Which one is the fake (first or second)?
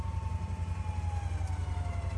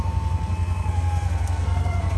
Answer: second